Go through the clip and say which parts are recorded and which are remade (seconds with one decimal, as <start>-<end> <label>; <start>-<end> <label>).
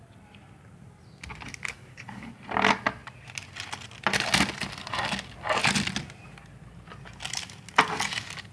0.0-1.7 recorded; 1.7-2.3 remade; 2.3-8.5 recorded